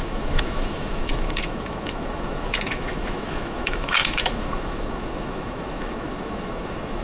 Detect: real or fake fake